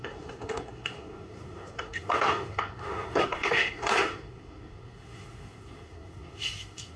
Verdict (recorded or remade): remade